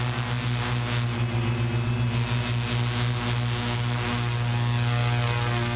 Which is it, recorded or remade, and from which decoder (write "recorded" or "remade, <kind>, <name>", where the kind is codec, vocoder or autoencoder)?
recorded